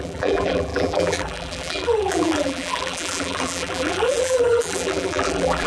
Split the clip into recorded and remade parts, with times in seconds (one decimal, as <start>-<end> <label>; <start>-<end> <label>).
0.0-5.7 remade